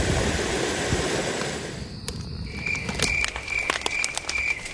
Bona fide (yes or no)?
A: yes